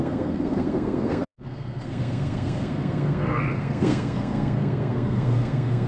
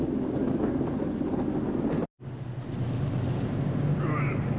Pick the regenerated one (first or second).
first